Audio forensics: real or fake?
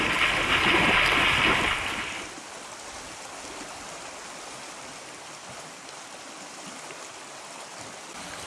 real